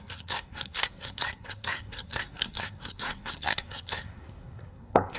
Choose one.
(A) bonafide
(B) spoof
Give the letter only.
B